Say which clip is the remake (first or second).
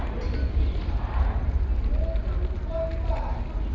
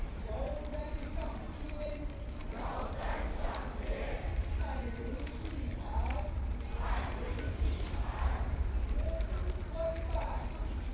second